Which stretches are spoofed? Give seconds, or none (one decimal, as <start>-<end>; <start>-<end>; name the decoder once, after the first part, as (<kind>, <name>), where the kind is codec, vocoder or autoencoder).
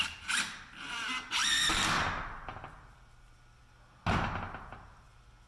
none